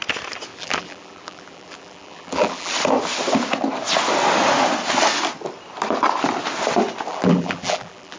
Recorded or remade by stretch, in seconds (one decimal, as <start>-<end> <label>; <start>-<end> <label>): 0.0-0.5 recorded; 0.5-2.7 remade; 2.7-7.1 recorded; 7.1-8.2 remade